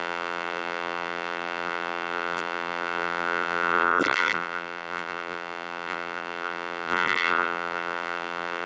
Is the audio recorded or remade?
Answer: remade